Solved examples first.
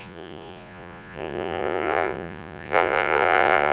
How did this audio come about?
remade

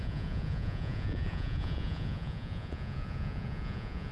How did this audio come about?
remade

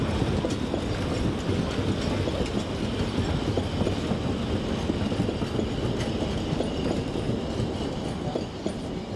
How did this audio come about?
recorded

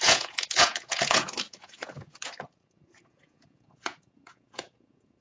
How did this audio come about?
remade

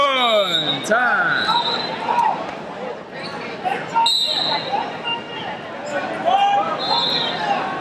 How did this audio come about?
recorded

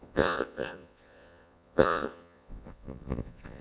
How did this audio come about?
remade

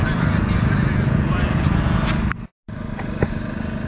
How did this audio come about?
recorded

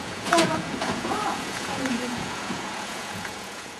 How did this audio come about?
remade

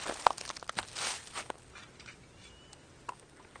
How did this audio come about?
recorded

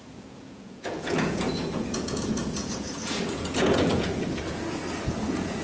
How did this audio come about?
remade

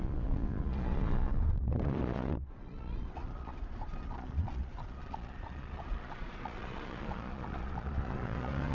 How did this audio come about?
remade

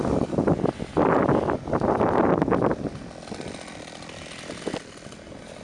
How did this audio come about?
recorded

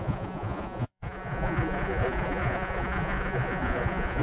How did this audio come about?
remade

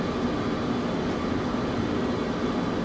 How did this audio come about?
recorded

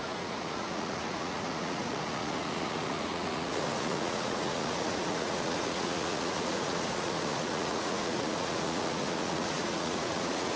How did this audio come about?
remade